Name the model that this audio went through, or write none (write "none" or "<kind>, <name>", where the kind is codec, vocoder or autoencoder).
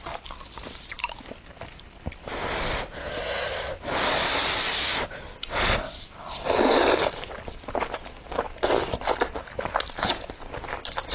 none